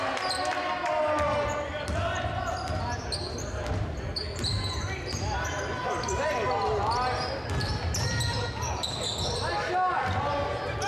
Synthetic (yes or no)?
no